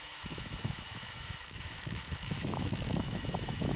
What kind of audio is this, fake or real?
fake